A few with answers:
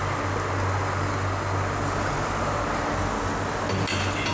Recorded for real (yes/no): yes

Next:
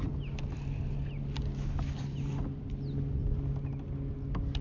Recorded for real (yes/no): yes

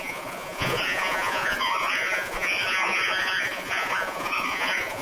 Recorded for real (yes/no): no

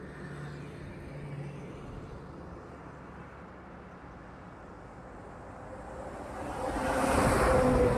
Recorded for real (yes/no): yes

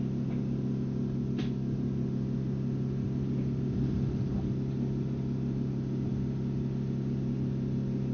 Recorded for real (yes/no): yes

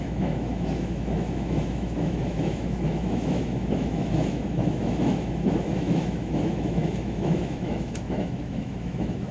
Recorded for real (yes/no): no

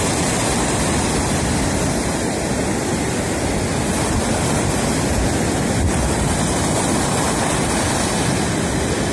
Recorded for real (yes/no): yes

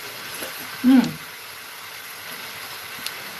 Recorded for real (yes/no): yes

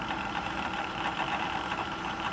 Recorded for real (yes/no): no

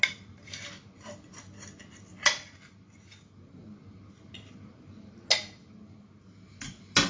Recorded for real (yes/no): yes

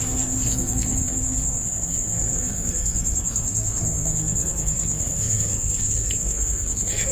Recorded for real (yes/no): no